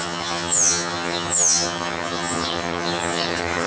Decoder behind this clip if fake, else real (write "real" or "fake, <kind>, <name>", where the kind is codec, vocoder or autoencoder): fake, vocoder, HiFi-GAN